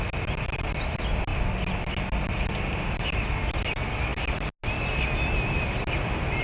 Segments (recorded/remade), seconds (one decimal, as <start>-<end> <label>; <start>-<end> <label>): 0.0-6.4 recorded